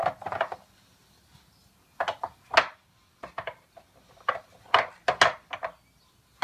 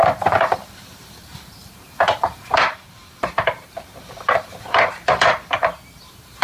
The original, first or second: first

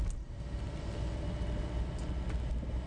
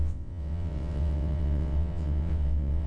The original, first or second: first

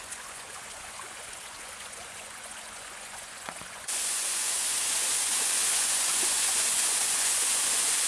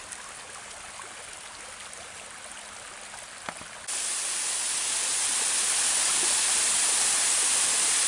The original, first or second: second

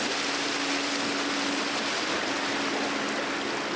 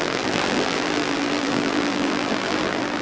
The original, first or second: first